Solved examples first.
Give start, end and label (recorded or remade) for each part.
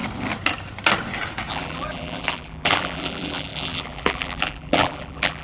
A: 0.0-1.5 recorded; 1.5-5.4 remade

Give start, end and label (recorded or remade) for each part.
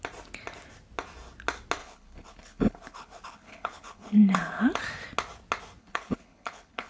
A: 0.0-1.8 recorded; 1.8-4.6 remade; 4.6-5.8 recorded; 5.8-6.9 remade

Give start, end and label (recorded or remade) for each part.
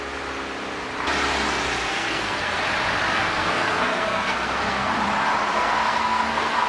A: 0.0-1.9 recorded; 1.9-2.6 remade; 2.6-3.1 recorded; 3.1-4.9 remade; 4.9-5.5 recorded; 5.5-6.7 remade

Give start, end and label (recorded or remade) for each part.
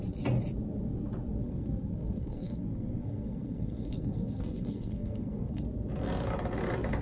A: 0.0-1.4 recorded; 1.4-5.6 remade; 5.6-7.0 recorded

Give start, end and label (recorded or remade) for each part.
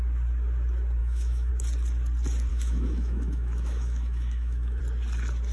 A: 0.0-1.0 recorded; 1.0-1.5 remade; 1.5-2.5 recorded; 2.5-4.8 remade; 4.8-5.5 recorded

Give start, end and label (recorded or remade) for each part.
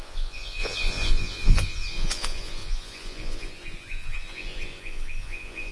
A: 0.0-5.7 remade